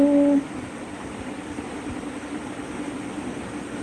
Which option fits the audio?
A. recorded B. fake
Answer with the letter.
A